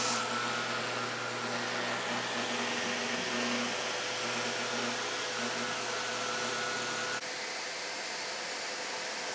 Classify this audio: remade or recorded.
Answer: recorded